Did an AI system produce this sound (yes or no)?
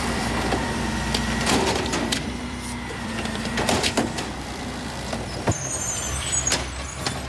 yes